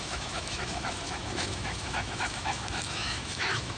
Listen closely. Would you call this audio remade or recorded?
remade